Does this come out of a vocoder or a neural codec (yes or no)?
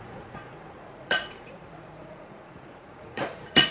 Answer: yes